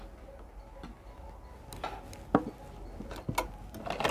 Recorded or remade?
recorded